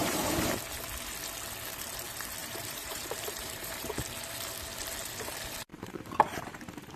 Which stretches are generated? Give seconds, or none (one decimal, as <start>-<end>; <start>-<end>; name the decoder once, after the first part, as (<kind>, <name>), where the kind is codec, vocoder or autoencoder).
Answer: 0.0-0.6 (vocoder, BigVGAN v2); 2.4-3.8; 5.7-6.6